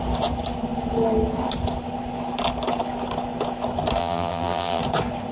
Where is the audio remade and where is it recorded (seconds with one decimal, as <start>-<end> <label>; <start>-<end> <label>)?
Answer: 0.0-4.0 recorded; 4.0-4.8 remade; 4.8-5.3 recorded